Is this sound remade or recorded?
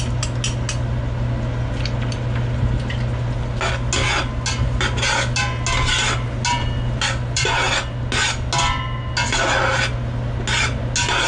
recorded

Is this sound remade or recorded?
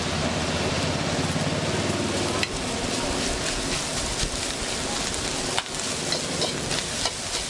recorded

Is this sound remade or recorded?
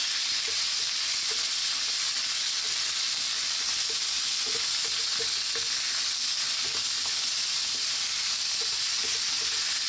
recorded